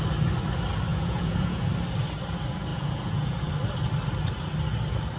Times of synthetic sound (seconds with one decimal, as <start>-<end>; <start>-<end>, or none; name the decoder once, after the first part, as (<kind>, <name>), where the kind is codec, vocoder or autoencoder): 0.9-1.7 (vocoder, Vocos); 2.7-3.5

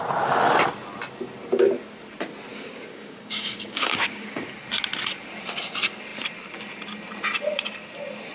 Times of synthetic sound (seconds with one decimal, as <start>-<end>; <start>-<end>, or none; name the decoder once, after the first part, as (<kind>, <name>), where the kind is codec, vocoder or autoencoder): 2.5-4.5 (codec, DAC)

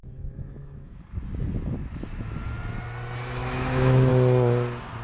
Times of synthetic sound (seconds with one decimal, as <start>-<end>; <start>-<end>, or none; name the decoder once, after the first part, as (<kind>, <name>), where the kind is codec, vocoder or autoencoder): 0.0-1.0 (autoencoder, DAC-VAE); 3.4-4.1

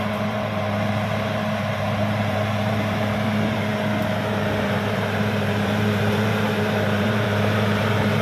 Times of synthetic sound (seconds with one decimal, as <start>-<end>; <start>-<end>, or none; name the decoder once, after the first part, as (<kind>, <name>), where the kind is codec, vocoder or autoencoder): 0.0-3.7 (vocoder, BigVGAN v2); 4.3-8.2

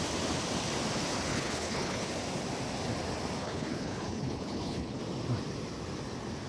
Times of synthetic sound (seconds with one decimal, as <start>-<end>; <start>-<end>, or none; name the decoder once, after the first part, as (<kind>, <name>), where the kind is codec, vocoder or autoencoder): 1.3-2.1 (codec, HILCodec); 3.4-5.0

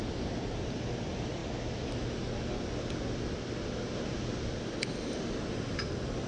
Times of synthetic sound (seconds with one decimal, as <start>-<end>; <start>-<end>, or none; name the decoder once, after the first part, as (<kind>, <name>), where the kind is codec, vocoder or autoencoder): 0.0-1.4 (vocoder, BigVGAN v2); 5.2-6.3

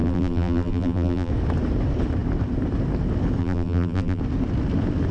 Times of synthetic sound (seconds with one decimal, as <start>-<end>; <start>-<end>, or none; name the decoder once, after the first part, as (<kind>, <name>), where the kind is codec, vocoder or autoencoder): 0.0-1.3 (vocoder, BigVGAN v2); 3.4-4.2

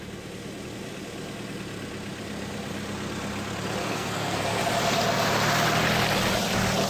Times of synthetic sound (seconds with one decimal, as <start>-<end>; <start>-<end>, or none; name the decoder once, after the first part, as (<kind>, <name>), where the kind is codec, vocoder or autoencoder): 3.8-4.6 (codec, SNAC)